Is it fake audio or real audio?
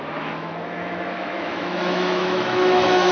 fake